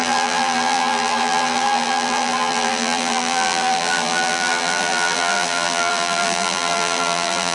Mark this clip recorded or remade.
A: remade